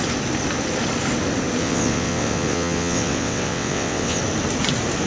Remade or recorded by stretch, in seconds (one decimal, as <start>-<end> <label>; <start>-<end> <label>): 0.0-1.6 recorded; 1.6-4.2 remade; 4.2-5.1 recorded